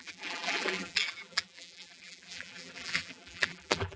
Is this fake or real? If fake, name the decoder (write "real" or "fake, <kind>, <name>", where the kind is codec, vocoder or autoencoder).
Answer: fake, vocoder, BigVGAN v2